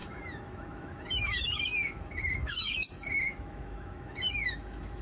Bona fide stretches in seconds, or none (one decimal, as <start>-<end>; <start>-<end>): none